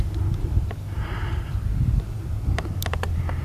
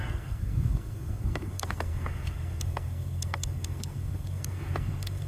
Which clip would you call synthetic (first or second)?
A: second